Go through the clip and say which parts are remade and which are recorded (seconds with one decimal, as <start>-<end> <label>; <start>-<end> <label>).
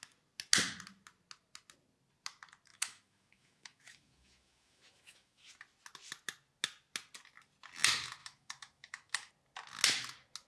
0.0-2.7 recorded; 2.7-5.5 remade; 5.5-8.2 recorded; 8.2-9.3 remade; 9.3-10.5 recorded